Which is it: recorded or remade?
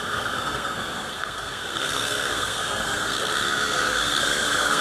remade